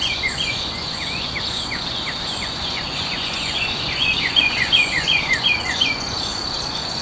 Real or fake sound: fake